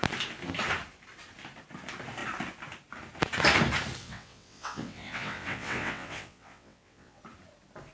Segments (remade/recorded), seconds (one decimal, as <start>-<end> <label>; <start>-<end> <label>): 0.0-4.0 recorded; 4.0-7.2 remade; 7.2-7.9 recorded